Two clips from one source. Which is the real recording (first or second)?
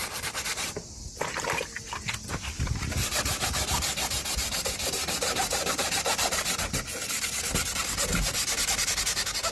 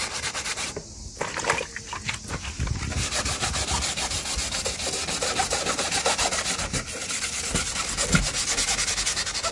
second